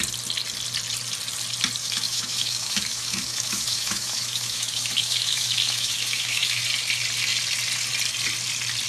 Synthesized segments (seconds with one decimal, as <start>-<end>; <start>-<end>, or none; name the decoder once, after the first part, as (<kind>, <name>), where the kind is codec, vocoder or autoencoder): 1.8-6.6 (autoencoder, DAC-VAE)